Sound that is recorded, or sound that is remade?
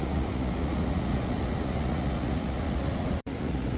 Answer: remade